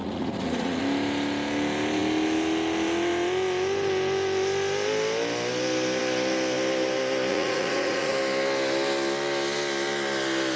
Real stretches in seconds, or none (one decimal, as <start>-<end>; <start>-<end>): 0.8-7.3; 8.1-10.6

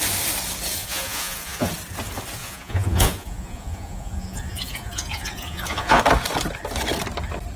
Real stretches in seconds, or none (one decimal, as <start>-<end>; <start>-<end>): 0.0-0.8; 1.7-2.4; 6.0-7.6